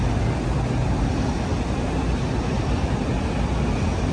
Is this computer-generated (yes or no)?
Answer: no